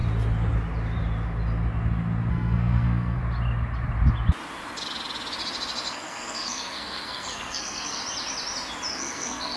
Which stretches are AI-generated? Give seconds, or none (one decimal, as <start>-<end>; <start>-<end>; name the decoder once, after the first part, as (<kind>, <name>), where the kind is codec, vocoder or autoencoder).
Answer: 2.3-3.2 (codec, SNAC); 5.9-8.0; 8.9-9.6